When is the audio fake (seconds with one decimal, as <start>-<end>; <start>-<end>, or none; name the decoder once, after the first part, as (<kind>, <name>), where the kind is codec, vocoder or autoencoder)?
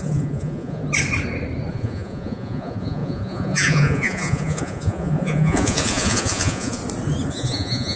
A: 0.0-0.8 (vocoder, Vocos); 1.7-6.8; 7.3-8.0